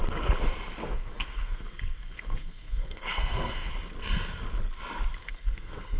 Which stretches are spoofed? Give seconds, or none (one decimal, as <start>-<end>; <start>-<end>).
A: 0.8-3.7; 5.2-6.0